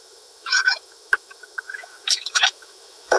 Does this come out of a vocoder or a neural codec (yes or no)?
yes